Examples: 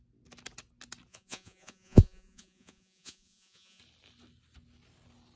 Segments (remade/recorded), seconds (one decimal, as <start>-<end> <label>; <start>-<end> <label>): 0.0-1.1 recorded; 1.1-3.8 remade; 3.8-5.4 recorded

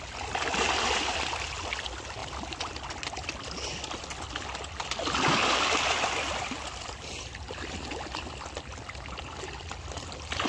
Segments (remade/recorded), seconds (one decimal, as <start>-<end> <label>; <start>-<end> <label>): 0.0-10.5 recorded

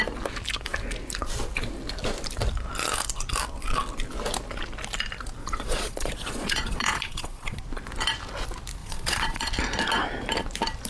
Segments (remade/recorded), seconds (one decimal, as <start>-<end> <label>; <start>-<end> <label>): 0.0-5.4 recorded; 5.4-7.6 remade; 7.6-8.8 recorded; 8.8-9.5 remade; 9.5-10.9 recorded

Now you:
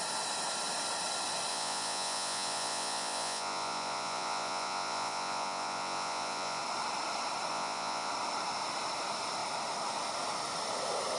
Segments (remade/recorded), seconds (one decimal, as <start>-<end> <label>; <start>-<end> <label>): 0.0-1.5 recorded; 1.5-6.6 remade; 6.6-7.5 recorded; 7.5-8.1 remade; 8.1-11.2 recorded

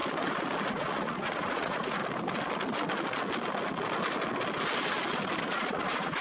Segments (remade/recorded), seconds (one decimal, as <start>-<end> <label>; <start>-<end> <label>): 0.0-0.7 recorded; 0.7-2.0 remade; 2.0-5.4 recorded; 5.4-6.2 remade

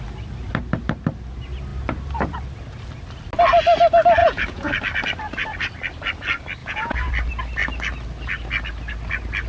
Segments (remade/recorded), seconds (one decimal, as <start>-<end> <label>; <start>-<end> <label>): 0.0-4.2 recorded; 4.2-4.7 remade; 4.7-6.6 recorded; 6.6-7.1 remade; 7.1-9.5 recorded

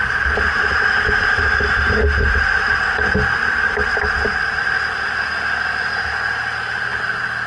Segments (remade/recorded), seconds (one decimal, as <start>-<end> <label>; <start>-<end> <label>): 0.0-7.5 recorded

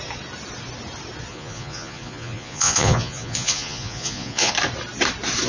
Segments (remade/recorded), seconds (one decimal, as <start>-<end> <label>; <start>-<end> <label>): 0.0-1.3 recorded; 1.3-4.5 remade; 4.5-5.5 recorded